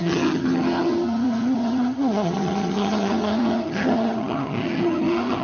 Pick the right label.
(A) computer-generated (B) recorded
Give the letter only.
A